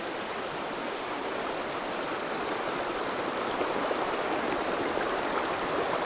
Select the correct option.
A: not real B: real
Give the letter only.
A